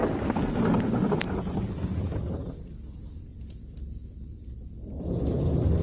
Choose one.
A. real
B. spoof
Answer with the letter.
A